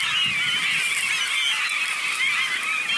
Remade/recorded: recorded